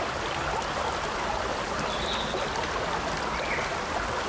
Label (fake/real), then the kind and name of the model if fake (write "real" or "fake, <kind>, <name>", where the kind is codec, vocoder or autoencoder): real